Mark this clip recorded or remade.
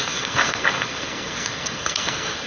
remade